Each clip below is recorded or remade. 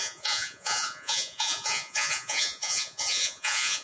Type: remade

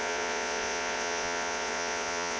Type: remade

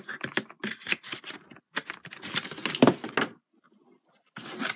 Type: recorded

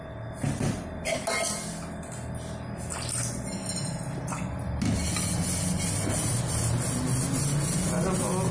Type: recorded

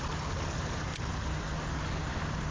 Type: recorded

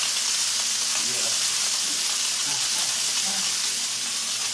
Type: recorded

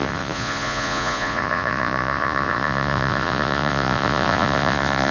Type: remade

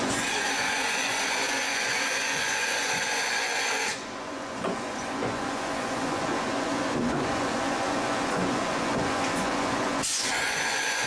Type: remade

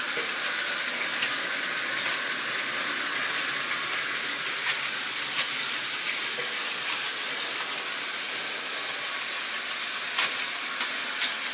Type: recorded